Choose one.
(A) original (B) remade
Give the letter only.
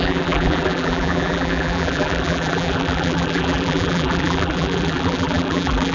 B